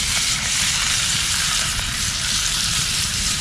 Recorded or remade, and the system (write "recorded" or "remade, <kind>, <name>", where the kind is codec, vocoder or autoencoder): remade, vocoder, BigVGAN v2